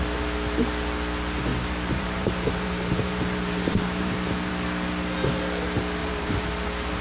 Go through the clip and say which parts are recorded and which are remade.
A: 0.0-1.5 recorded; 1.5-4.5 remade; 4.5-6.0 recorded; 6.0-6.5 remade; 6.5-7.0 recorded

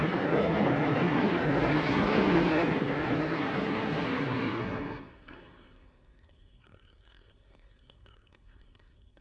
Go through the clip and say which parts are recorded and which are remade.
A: 0.0-9.2 remade

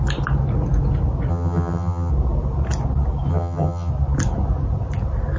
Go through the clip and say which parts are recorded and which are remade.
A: 0.0-1.3 recorded; 1.3-2.1 remade; 2.1-3.3 recorded; 3.3-3.9 remade; 3.9-5.4 recorded

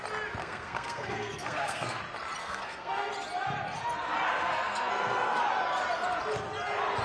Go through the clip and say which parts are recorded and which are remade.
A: 0.0-0.4 recorded; 0.4-2.0 remade; 2.0-2.4 recorded; 2.4-3.1 remade; 3.1-4.4 recorded; 4.4-5.4 remade; 5.4-7.0 recorded